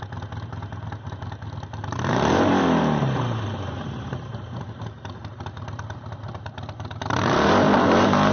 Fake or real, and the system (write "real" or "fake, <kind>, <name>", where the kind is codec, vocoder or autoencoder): fake, vocoder, BigVGAN v2